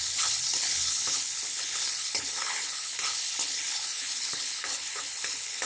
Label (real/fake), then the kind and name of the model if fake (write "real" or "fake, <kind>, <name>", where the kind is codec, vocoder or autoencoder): fake, codec, HILCodec